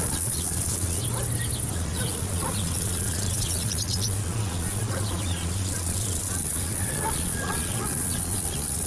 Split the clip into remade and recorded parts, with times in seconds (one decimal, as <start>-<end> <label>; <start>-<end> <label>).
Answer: 0.0-1.0 remade; 1.0-1.7 recorded; 1.7-8.9 remade